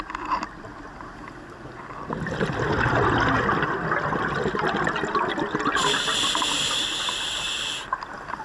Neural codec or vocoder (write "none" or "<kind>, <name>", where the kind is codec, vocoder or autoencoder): none